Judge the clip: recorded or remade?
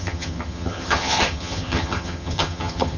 remade